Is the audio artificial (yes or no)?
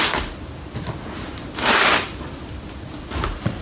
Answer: no